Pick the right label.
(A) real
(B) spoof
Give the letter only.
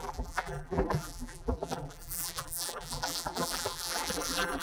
B